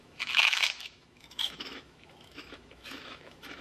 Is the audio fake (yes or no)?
yes